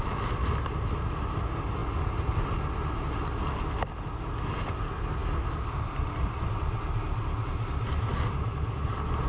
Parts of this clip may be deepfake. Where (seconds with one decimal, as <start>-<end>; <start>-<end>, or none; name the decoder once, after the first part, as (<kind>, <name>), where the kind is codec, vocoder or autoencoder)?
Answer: none